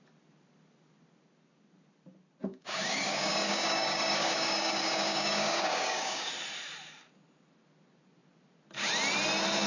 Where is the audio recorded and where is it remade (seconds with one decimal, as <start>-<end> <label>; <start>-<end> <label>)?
0.0-2.5 recorded; 2.5-6.3 remade; 6.3-9.7 recorded